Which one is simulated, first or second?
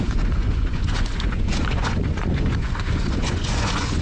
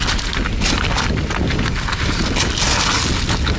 first